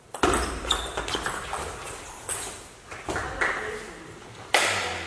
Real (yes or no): yes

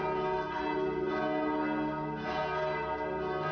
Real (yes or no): yes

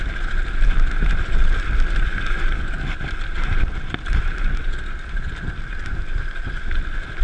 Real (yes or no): no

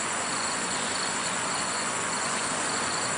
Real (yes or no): no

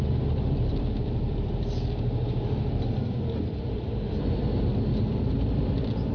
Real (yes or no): no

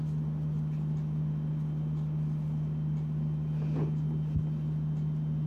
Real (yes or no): yes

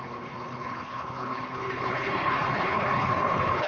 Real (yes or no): no